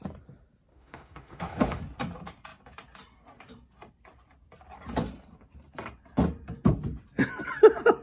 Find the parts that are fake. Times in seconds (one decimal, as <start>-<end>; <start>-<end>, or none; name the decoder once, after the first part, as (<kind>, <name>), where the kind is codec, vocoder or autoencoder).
0.7-1.8 (autoencoder, DAC-VAE)